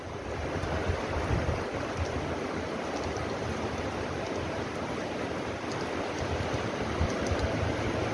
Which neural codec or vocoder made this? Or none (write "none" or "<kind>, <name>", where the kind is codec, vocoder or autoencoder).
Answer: none